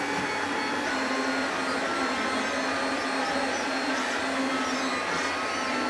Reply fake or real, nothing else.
real